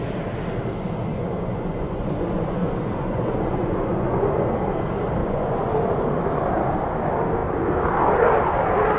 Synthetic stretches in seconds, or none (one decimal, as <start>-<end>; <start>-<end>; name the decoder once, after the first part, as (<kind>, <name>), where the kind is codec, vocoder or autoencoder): 1.1-4.4 (vocoder, Vocos); 5.2-5.7